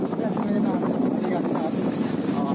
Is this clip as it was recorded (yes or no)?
no